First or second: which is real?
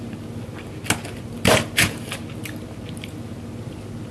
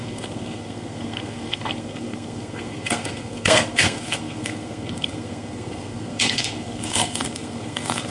first